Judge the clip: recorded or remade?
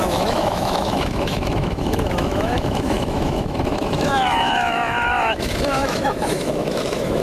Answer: remade